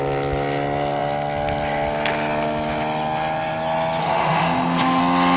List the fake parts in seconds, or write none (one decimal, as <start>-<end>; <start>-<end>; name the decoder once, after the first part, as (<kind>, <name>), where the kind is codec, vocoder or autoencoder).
4.0-5.0 (autoencoder, DAC-VAE)